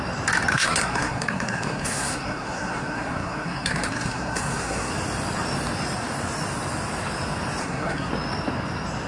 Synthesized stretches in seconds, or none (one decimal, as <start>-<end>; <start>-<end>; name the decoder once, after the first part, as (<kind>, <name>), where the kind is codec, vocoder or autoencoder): 0.5-4.9 (codec, SNAC); 7.6-8.1